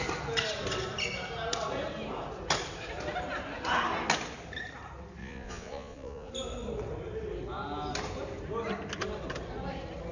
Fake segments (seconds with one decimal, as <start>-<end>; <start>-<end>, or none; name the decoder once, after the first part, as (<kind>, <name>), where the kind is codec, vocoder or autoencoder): 5.2-6.3 (vocoder, Vocos)